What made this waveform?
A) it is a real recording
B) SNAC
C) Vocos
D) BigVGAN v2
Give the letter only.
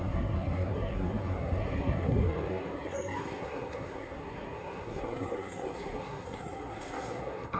B